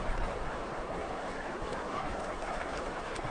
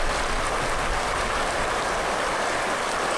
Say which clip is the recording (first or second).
second